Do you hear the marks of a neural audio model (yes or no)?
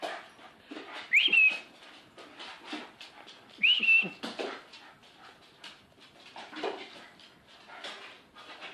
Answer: no